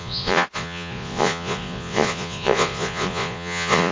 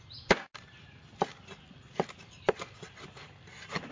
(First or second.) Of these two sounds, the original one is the second